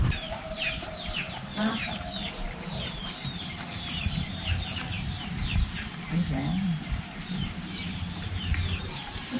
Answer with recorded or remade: remade